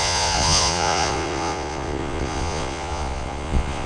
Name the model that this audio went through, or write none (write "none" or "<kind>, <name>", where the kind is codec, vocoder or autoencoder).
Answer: vocoder, Vocos